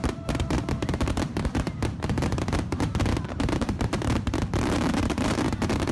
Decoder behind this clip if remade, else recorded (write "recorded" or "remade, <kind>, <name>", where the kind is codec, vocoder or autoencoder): remade, vocoder, BigVGAN v2